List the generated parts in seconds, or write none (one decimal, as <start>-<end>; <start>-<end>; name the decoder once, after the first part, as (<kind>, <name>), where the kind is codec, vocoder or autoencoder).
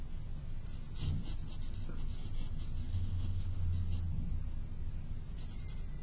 2.9-3.6 (autoencoder, DAC-VAE)